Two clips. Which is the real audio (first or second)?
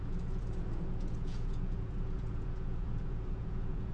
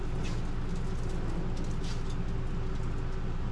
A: second